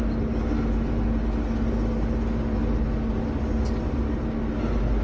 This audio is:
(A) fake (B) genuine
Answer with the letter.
B